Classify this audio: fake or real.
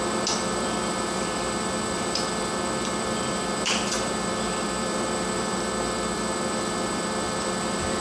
fake